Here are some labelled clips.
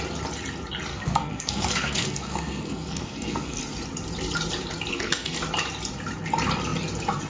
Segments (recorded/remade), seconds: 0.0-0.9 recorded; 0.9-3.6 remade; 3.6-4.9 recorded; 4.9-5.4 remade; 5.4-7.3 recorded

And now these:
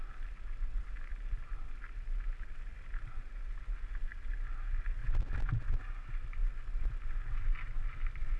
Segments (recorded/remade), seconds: 0.0-8.4 recorded

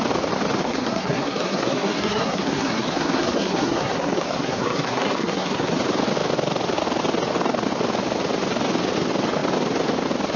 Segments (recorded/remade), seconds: 0.0-0.6 recorded; 0.6-5.7 remade; 5.7-10.4 recorded

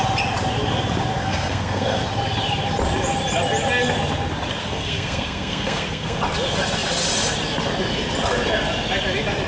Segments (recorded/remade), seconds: 0.0-1.2 recorded; 1.2-2.0 remade; 2.0-4.6 recorded; 4.6-6.2 remade; 6.2-9.5 recorded